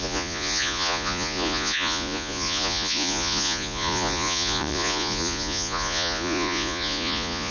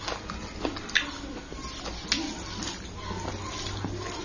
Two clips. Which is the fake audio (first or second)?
first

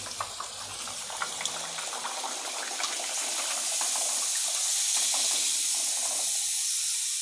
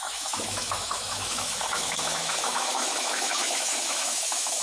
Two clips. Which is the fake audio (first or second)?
second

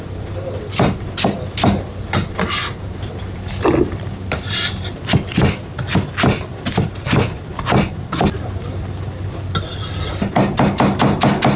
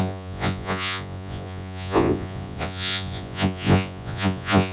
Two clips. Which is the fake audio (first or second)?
second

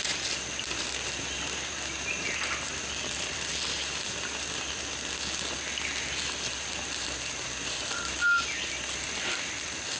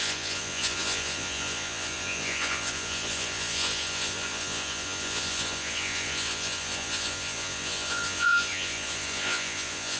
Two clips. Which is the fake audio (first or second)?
second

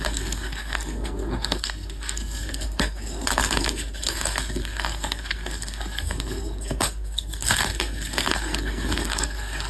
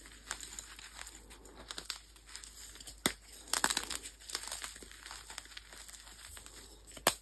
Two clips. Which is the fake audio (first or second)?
first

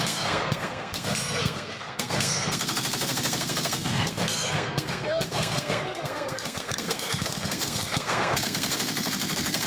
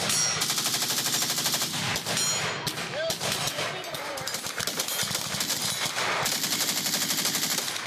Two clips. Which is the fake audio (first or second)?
first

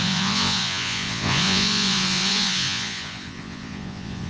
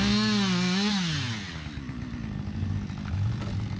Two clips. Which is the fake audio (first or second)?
first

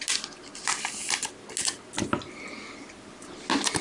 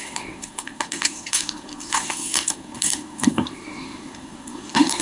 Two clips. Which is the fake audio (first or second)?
second